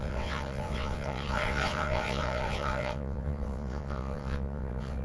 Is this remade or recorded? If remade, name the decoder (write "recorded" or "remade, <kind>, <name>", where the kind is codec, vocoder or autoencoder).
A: remade, vocoder, WaveNeXt